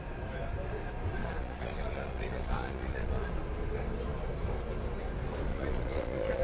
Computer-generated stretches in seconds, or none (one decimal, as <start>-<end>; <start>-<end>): 1.2-3.3; 5.5-6.4